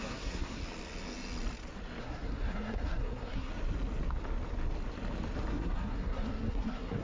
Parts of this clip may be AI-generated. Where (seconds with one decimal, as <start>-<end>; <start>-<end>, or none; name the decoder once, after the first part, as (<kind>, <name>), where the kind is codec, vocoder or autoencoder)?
0.0-0.6 (codec, SNAC); 2.0-3.5; 5.5-7.0